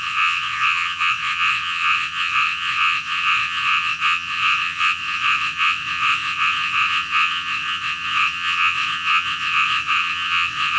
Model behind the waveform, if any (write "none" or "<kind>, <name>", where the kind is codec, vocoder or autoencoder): vocoder, WaveNeXt